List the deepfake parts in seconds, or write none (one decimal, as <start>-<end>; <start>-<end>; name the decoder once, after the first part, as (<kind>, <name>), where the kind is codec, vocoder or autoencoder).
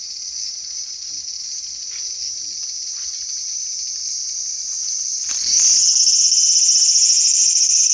4.0-5.3 (vocoder, Vocos)